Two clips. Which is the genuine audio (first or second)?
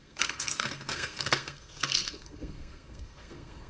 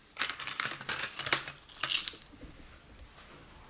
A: second